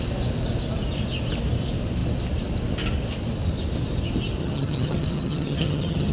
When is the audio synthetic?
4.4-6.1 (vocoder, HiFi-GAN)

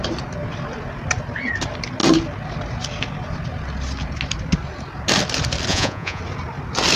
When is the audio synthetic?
5.7-6.2 (vocoder, Vocos)

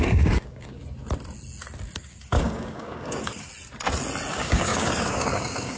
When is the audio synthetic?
0.0-0.8 (codec, DAC); 2.0-3.5; 4.3-5.8

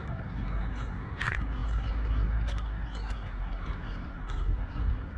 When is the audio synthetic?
0.0-5.2 (codec, SNAC)

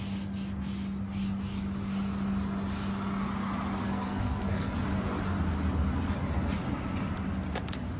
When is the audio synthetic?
3.8-4.7 (codec, SNAC)

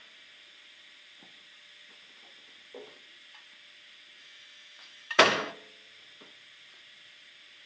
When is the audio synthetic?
4.2-5.5 (autoencoder, DAC-VAE)

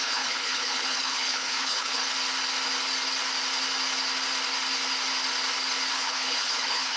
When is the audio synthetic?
0.0-2.0 (codec, HILCodec); 5.9-7.0